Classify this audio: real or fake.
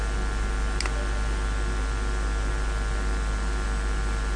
real